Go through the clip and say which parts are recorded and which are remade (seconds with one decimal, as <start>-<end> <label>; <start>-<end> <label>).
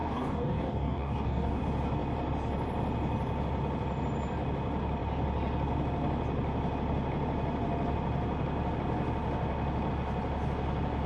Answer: 0.0-1.6 remade; 1.6-11.1 recorded